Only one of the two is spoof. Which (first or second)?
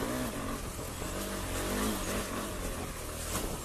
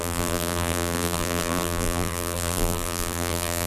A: second